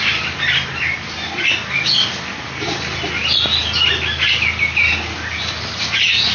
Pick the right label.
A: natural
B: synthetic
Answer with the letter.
A